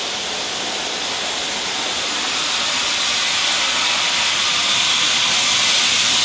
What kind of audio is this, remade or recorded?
recorded